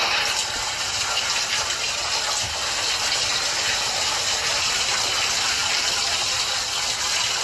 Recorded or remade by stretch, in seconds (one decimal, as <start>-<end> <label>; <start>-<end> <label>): 0.0-7.4 recorded